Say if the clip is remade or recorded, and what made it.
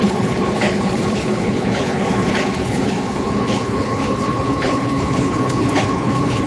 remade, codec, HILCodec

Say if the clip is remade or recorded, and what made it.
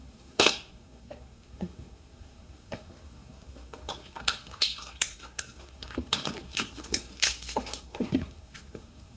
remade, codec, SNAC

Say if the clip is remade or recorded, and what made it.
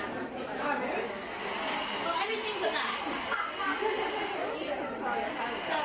recorded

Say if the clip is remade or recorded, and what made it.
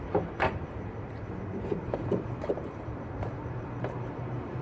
remade, vocoder, BigVGAN v2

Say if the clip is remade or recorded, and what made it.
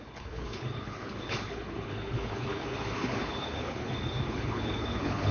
remade, codec, HILCodec